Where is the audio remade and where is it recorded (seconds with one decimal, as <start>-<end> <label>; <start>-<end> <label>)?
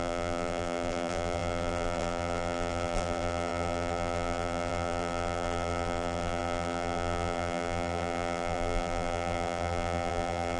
0.0-10.6 remade